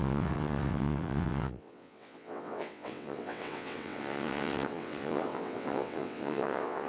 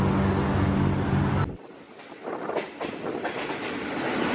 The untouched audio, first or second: second